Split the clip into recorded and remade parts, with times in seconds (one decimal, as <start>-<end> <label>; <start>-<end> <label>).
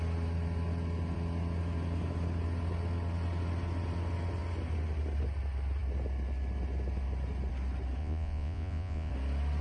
0.0-8.0 recorded; 8.0-9.1 remade; 9.1-9.6 recorded